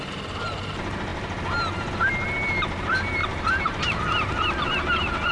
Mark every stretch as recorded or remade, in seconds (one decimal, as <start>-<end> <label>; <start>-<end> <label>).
0.0-3.2 recorded; 3.2-3.8 remade; 3.8-5.3 recorded